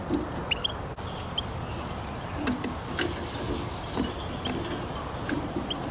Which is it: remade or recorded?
recorded